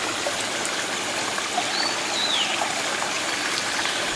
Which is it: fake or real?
real